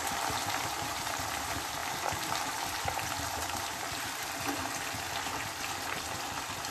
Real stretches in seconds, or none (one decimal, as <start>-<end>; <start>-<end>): none